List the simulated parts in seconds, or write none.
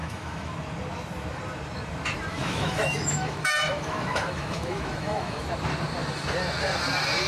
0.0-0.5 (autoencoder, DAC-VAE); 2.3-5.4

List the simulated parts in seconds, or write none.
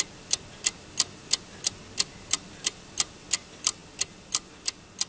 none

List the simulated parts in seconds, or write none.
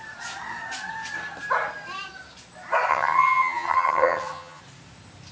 2.9-4.6 (vocoder, HiFi-GAN)